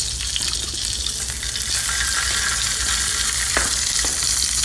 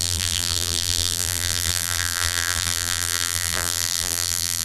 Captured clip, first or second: first